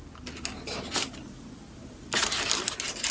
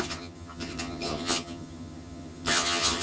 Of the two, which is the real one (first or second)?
first